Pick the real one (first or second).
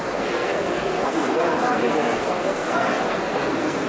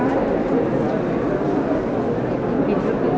second